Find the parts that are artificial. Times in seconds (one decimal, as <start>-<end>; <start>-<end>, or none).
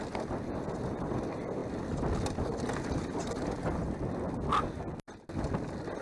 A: none